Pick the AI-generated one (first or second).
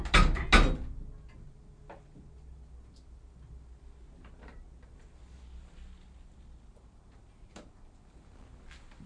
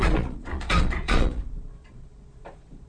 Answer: second